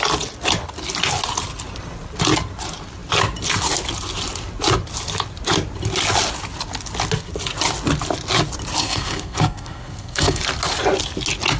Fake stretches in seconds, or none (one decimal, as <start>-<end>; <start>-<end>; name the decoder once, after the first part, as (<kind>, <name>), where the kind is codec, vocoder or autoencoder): 8.8-10.4 (codec, SNAC)